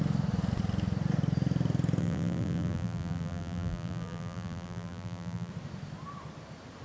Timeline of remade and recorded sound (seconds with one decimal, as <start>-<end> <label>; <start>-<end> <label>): 0.0-2.0 recorded; 2.0-5.5 remade; 5.5-6.8 recorded